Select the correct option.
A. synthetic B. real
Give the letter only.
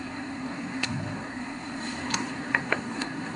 A